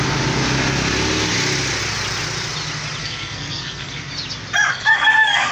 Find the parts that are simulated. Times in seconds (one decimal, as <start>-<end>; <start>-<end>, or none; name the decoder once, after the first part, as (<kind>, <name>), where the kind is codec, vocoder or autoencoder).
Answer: 3.0-4.1 (codec, SNAC); 4.7-5.5